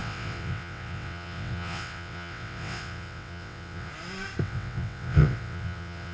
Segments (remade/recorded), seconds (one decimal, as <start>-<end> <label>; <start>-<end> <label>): 0.0-3.9 remade; 3.9-4.4 recorded; 4.4-6.1 remade

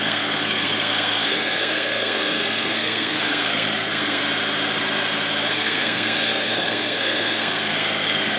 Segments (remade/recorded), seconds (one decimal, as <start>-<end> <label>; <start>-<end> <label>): 0.0-4.2 remade; 4.2-5.5 recorded; 5.5-8.4 remade